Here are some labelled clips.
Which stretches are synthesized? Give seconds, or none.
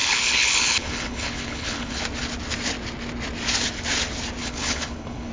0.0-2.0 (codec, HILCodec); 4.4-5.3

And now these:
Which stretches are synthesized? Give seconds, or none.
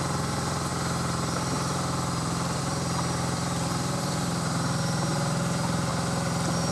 0.0-5.9 (vocoder, BigVGAN v2)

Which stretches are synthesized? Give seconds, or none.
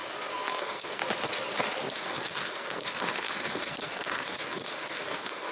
0.6-1.0 (codec, SNAC); 1.9-5.5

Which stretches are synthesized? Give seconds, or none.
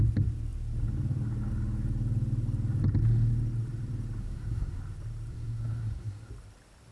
4.2-4.8 (codec, SNAC); 5.3-6.3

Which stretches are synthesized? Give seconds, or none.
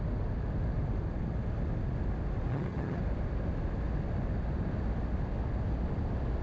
2.5-3.0 (vocoder, HiFi-GAN)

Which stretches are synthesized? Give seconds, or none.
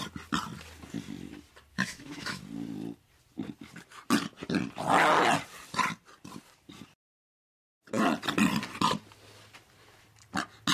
1.7-2.4 (autoencoder, DAC-VAE)